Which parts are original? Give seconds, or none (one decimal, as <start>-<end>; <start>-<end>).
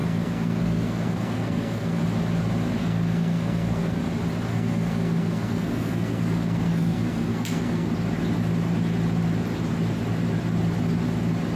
2.0-2.8; 4.0-4.5; 7.9-11.6